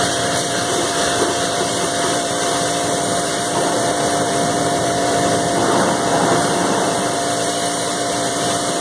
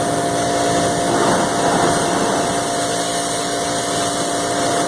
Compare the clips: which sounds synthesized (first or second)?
first